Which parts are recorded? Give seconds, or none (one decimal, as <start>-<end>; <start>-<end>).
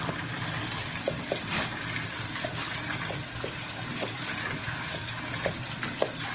0.0-4.6; 5.2-6.3